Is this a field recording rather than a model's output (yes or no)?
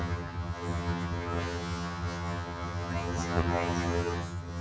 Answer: no